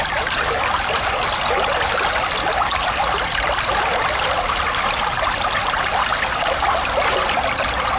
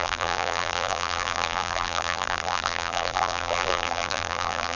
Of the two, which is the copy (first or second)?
second